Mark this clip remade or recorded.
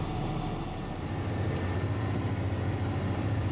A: recorded